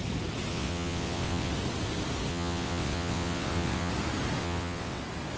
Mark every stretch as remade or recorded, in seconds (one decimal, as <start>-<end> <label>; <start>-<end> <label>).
0.0-0.5 recorded; 0.5-1.5 remade; 1.5-2.3 recorded; 2.3-3.9 remade; 3.9-4.4 recorded; 4.4-5.0 remade; 5.0-5.4 recorded